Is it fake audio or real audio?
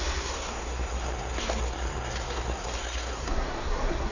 fake